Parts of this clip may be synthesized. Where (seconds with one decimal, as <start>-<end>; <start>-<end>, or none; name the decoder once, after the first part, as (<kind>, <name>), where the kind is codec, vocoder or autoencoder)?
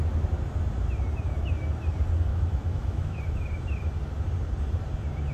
2.3-3.2 (autoencoder, DAC-VAE)